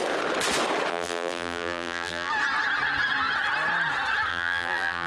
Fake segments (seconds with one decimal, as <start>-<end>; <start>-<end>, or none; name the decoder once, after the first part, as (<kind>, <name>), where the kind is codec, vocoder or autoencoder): 0.9-2.3 (vocoder, BigVGAN v2); 4.3-5.1